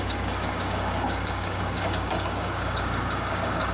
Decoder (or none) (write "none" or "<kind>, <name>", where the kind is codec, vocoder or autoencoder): codec, DAC